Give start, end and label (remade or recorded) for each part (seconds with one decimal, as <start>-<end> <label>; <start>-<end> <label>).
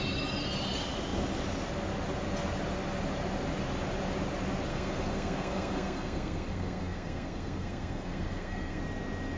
0.0-4.7 recorded; 4.7-8.8 remade; 8.8-9.4 recorded